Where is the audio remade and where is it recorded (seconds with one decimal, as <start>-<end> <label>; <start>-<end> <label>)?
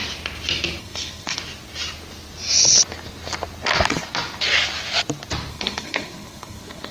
0.0-0.8 recorded; 0.8-1.4 remade; 1.4-5.5 recorded; 5.5-6.9 remade